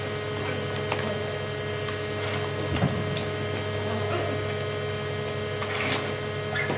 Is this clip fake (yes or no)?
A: no